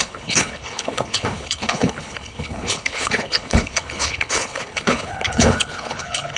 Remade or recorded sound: remade